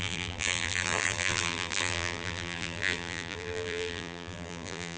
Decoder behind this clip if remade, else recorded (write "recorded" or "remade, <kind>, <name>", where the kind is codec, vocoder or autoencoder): remade, vocoder, BigVGAN v2